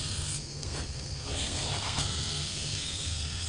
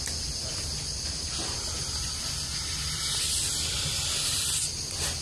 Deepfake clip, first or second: first